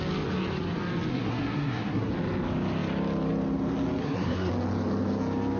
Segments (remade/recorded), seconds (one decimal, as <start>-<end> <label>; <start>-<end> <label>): 0.0-1.1 recorded; 1.1-2.1 remade; 2.1-4.0 recorded; 4.0-4.5 remade; 4.5-5.6 recorded